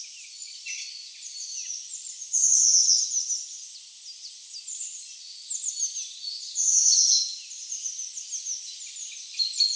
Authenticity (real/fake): real